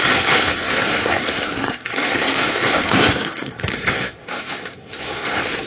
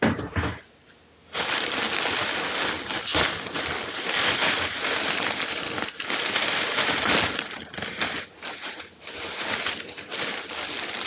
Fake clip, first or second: first